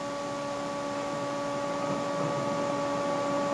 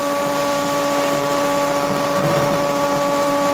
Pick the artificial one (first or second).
second